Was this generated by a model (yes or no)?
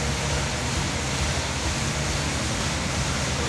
no